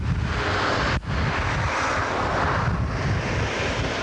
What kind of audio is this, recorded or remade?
recorded